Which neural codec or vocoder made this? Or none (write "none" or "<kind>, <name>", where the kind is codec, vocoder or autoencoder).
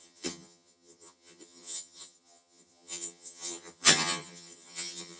vocoder, HiFi-GAN